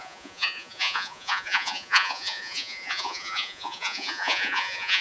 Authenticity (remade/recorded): remade